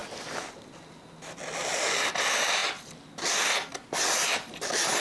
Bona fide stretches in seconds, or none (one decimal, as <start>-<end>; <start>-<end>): 0.0-5.0